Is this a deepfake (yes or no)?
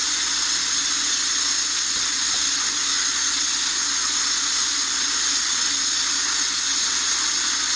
no